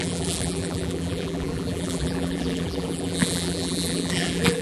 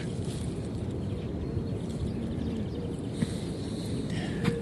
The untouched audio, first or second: second